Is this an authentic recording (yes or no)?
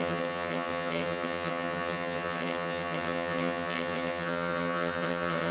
no